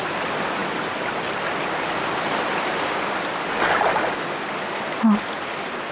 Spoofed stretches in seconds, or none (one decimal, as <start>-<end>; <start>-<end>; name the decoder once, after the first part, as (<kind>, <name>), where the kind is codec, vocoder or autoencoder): none